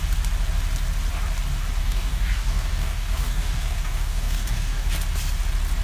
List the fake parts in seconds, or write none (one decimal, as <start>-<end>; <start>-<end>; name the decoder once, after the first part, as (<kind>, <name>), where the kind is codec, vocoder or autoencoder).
1.8-4.9 (codec, DAC)